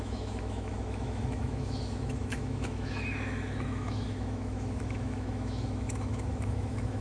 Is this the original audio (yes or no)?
no